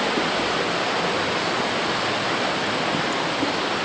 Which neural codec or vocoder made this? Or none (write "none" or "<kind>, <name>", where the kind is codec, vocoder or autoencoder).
none